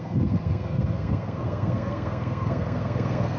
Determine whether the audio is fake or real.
fake